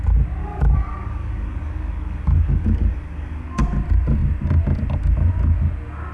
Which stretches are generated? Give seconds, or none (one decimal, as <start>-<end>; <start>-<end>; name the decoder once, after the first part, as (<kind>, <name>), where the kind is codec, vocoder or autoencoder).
0.4-3.6 (codec, DAC)